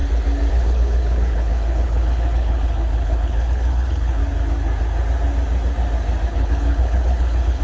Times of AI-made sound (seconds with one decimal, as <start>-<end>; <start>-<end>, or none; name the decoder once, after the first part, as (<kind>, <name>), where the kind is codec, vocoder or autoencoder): 0.5-4.2 (codec, HILCodec); 6.3-7.6